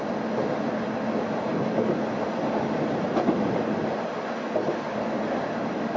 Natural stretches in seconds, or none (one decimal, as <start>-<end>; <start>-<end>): 0.0-6.0